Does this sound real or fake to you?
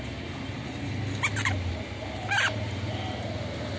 real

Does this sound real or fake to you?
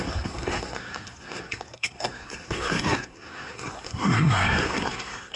fake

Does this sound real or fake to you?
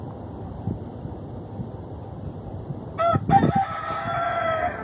real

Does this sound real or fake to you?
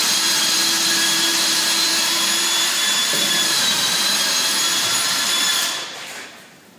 fake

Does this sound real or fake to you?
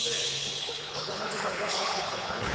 fake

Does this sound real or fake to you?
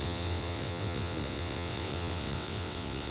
fake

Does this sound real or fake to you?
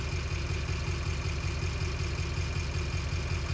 real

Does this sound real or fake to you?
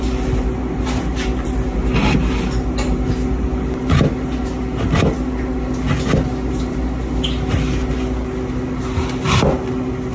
real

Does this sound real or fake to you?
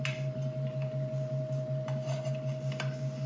real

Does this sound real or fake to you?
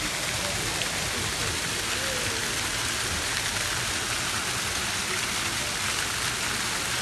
real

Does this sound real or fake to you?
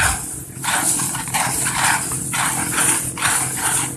fake